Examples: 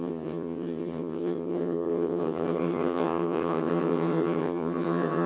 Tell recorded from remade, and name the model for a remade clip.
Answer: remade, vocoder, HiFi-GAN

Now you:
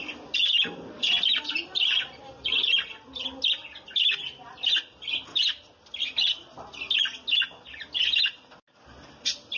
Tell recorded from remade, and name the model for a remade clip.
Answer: recorded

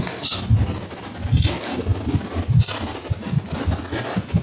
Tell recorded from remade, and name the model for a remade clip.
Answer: recorded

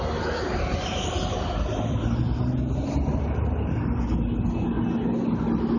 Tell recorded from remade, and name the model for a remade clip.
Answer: recorded